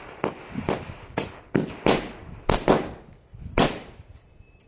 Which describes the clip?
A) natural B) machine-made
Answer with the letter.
A